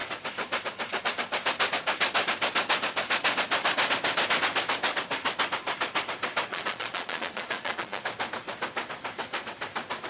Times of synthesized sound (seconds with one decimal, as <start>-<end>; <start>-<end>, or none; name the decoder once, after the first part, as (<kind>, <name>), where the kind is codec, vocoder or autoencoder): 6.5-8.0 (vocoder, Vocos)